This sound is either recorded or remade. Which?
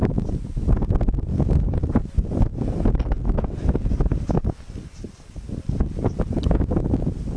recorded